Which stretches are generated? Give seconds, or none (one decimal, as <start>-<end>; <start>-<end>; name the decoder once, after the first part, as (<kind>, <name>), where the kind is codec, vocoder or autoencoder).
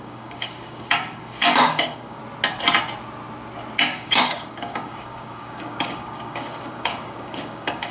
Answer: 0.0-2.2 (codec, DAC); 3.8-7.9